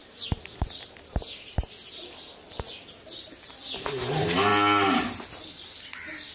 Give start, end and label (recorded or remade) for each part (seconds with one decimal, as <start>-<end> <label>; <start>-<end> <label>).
0.0-6.3 recorded